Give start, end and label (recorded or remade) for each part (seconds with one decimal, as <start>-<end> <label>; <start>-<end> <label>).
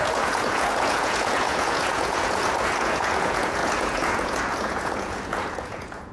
0.0-6.1 remade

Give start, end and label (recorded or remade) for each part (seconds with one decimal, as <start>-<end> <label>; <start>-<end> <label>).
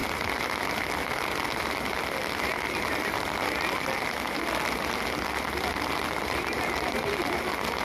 0.0-7.8 recorded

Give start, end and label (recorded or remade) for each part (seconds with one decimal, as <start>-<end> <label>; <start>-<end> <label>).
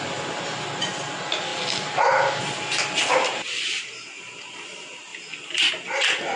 0.0-6.4 recorded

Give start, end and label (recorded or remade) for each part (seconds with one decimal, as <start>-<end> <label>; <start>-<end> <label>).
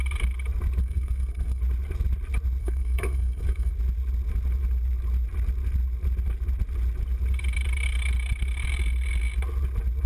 0.0-0.8 recorded; 0.8-1.6 remade; 1.6-2.6 recorded; 2.6-3.7 remade; 3.7-10.1 recorded